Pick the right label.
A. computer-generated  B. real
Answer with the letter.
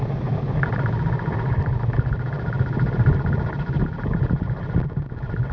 B